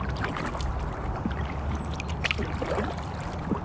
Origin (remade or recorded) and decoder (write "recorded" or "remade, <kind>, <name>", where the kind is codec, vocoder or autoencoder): recorded